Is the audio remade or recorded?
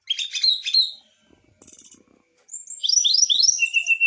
recorded